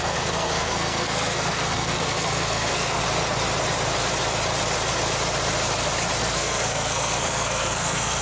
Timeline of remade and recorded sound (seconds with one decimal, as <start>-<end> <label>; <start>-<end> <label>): 0.0-3.0 remade; 3.0-6.2 recorded; 6.2-8.2 remade